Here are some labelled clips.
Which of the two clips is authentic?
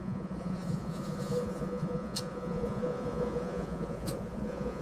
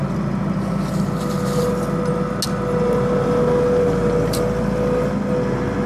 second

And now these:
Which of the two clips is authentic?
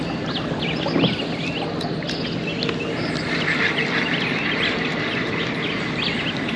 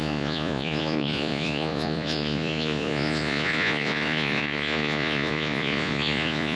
first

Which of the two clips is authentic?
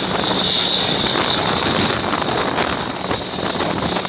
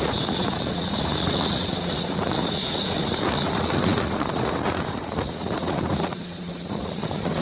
first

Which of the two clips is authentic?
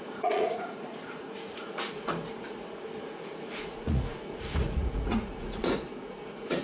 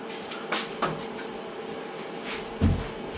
second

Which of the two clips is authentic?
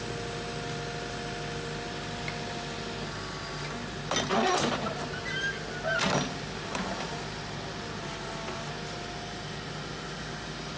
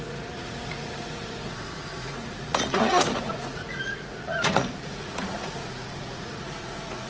first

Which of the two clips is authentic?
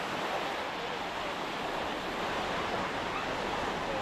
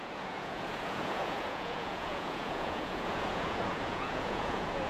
first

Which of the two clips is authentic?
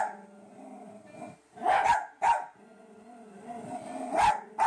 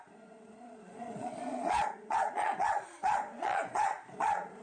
first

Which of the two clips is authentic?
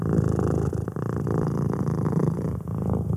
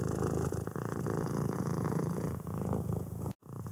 first